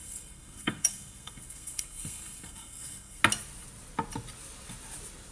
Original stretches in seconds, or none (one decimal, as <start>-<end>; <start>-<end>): 3.2-5.3